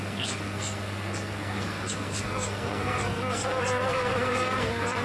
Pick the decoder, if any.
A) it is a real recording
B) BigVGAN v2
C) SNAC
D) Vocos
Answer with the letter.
C